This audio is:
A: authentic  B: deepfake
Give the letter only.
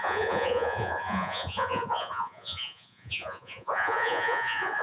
B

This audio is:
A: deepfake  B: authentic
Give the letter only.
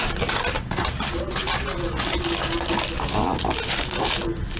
B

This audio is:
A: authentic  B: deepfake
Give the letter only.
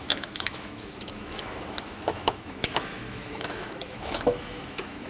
B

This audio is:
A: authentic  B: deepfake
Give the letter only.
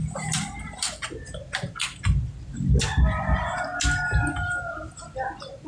A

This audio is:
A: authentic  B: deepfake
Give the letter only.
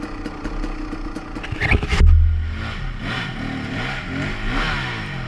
A